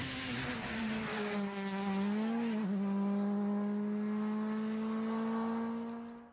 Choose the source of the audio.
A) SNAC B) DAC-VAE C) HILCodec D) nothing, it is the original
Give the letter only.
D